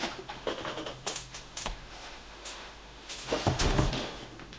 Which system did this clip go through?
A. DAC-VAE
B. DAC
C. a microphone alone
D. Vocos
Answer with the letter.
A